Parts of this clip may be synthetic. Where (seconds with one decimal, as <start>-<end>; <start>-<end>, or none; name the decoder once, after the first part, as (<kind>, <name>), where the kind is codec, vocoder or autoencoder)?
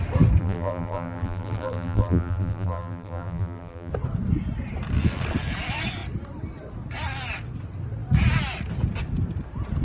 0.4-3.9 (vocoder, BigVGAN v2)